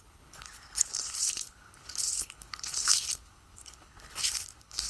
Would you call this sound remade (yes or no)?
yes